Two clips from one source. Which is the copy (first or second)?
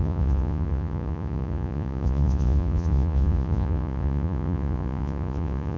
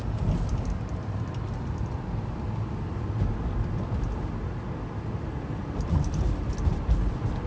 first